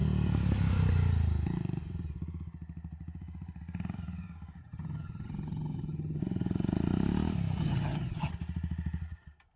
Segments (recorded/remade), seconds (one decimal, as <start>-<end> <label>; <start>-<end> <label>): 0.0-4.6 recorded; 4.6-6.2 remade; 6.2-7.6 recorded; 7.6-8.3 remade; 8.3-9.6 recorded